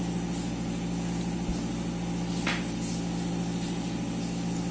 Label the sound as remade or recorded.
recorded